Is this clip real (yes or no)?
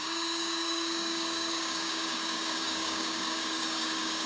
no